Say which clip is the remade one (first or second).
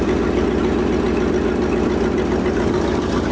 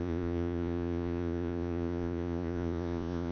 second